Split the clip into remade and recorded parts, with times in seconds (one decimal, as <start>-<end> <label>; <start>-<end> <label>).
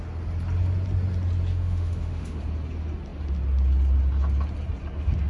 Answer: 0.0-1.5 recorded; 1.5-2.4 remade; 2.4-5.3 recorded